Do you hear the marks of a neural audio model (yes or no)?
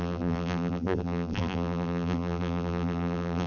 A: yes